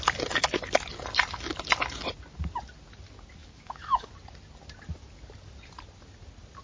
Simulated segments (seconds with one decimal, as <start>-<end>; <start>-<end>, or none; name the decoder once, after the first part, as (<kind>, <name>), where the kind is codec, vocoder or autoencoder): 3.4-4.1 (autoencoder, DAC-VAE)

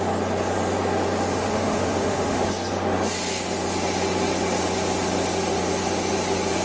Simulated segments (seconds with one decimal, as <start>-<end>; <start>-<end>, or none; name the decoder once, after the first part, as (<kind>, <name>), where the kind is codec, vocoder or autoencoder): 1.3-2.5 (autoencoder, DAC-VAE)

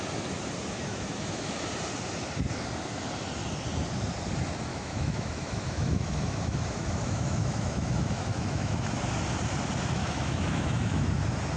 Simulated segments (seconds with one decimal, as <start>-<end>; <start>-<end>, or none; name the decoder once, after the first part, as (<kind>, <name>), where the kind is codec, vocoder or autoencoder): 0.9-1.7 (autoencoder, DAC-VAE); 4.7-9.0; 10.0-11.1